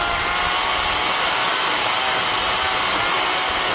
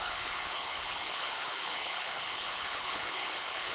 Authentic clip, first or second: first